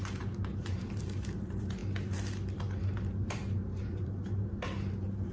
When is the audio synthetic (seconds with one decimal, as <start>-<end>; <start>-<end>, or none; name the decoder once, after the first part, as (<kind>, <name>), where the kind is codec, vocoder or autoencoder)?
0.0-1.8 (vocoder, BigVGAN v2); 3.1-5.3